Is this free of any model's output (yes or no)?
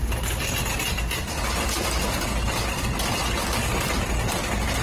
yes